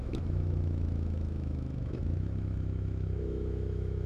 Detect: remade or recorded remade